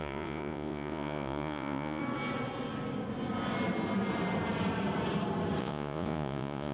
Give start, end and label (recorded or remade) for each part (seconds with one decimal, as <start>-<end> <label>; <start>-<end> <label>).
0.0-2.0 remade; 2.0-5.6 recorded; 5.6-6.7 remade